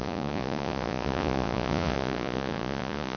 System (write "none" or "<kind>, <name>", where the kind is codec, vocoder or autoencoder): vocoder, Vocos